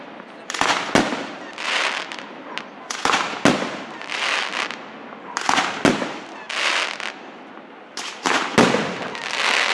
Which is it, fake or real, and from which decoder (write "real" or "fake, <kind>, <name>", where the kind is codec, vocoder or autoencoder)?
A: real